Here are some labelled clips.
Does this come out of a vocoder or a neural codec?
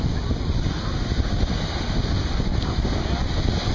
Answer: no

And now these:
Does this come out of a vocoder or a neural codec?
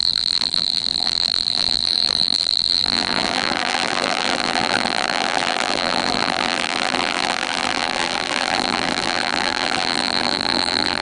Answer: yes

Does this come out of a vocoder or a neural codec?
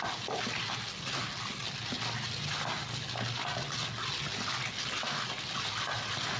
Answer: no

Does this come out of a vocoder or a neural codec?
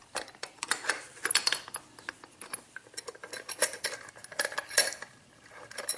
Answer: no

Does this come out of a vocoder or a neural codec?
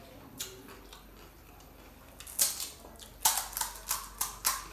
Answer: no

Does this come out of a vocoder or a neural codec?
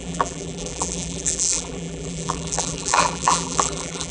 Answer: yes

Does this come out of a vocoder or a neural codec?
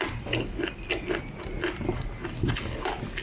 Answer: no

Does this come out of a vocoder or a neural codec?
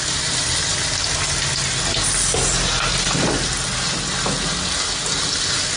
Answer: no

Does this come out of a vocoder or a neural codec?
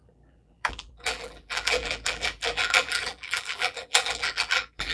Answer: yes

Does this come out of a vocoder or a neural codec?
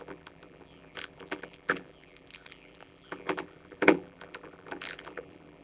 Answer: yes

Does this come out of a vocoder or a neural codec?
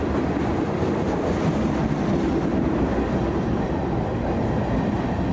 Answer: no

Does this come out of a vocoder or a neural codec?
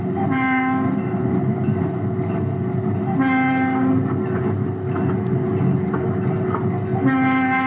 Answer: yes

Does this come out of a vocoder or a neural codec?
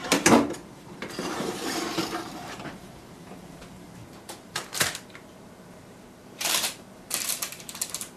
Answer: yes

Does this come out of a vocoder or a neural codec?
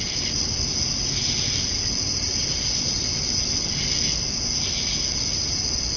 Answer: no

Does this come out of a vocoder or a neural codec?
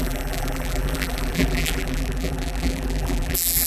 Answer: yes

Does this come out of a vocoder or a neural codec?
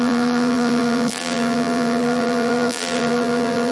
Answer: yes